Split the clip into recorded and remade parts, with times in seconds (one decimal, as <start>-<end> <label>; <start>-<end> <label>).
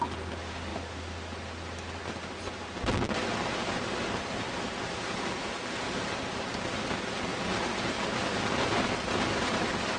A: 0.0-10.0 recorded